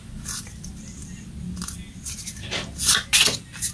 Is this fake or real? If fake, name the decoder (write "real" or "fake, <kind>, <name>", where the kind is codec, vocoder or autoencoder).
real